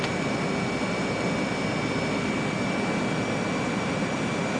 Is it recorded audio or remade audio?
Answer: recorded